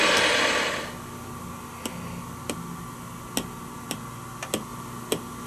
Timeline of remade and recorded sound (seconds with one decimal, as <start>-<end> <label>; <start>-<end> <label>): 0.0-5.5 recorded

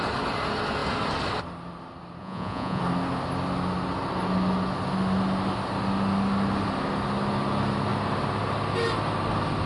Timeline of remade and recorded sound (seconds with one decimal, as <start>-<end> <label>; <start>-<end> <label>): 0.0-2.2 recorded; 2.2-2.8 remade; 2.8-9.7 recorded

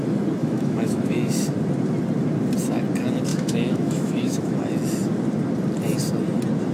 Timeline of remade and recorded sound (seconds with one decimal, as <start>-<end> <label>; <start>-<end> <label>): 0.0-0.4 recorded; 0.4-1.3 remade; 1.3-3.3 recorded; 3.3-4.6 remade; 4.6-6.7 recorded